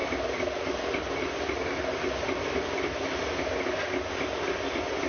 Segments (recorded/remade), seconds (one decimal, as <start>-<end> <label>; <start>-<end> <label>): 0.0-2.2 recorded; 2.2-3.2 remade; 3.2-4.3 recorded; 4.3-5.1 remade